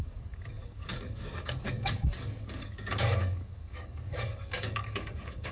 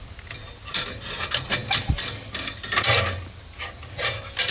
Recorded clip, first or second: second